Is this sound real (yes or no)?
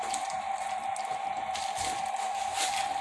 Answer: yes